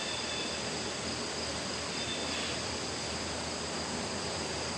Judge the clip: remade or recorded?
recorded